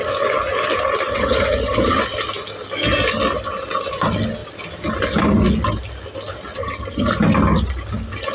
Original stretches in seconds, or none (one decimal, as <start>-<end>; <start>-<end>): 0.0-1.1; 2.0-6.6; 7.1-8.3